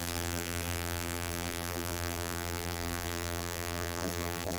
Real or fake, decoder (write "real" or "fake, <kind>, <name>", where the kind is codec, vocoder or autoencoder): fake, vocoder, BigVGAN v2